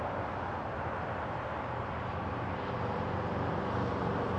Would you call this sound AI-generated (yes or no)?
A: no